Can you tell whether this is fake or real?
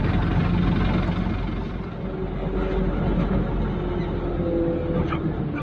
real